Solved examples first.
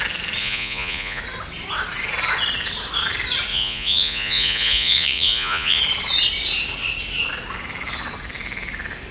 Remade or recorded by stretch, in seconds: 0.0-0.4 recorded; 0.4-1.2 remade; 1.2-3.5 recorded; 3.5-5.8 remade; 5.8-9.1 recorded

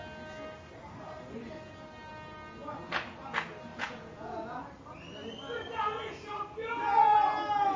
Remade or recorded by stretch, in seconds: 0.0-3.7 recorded; 3.7-4.6 remade; 4.6-7.8 recorded

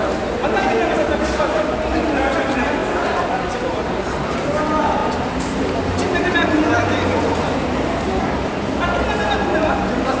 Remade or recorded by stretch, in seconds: 0.0-10.2 recorded